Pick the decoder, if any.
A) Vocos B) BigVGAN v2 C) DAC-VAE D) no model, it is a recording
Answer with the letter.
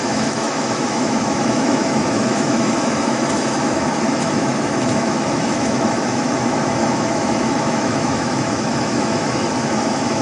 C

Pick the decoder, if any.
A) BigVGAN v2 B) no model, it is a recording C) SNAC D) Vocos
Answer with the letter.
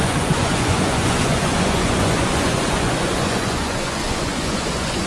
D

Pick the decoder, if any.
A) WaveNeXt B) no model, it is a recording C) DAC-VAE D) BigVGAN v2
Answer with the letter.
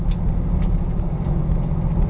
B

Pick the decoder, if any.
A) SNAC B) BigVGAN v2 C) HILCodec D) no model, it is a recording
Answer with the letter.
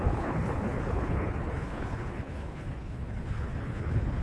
C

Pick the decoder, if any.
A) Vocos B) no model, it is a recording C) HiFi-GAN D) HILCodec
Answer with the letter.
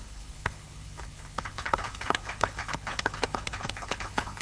D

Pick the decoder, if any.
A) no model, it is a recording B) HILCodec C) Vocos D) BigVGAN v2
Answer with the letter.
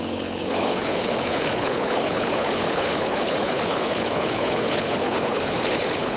B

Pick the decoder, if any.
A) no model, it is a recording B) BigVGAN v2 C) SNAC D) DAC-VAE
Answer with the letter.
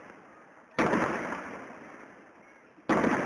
A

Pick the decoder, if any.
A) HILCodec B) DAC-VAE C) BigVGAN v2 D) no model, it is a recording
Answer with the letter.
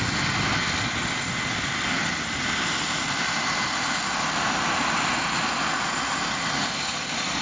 C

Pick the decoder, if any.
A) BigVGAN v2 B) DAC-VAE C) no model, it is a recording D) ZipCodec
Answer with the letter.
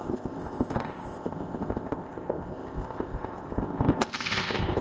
D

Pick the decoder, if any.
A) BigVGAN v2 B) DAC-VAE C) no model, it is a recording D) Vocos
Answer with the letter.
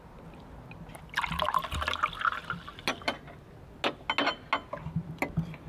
C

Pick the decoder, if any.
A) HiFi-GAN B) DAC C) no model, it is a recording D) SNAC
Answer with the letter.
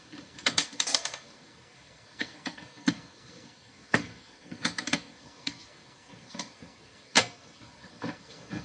D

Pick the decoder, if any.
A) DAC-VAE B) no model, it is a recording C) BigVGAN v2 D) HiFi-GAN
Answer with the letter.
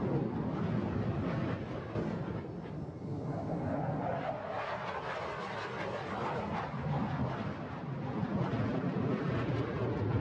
B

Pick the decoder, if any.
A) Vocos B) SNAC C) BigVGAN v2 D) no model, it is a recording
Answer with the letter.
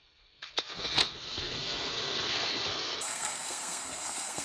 B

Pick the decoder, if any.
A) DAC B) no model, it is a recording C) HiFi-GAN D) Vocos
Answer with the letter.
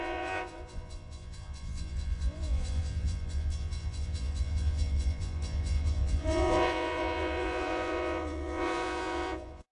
D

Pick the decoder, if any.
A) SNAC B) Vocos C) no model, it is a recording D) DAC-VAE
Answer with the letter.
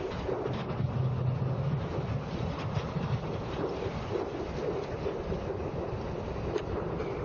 C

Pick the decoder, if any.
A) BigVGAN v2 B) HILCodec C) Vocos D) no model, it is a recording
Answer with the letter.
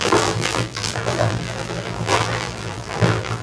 A